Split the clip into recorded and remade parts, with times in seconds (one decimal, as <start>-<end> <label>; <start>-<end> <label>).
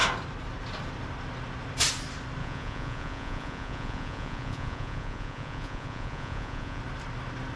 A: 0.0-2.4 recorded; 2.4-6.8 remade; 6.8-7.6 recorded